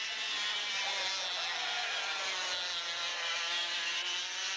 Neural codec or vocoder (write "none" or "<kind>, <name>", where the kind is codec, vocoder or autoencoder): none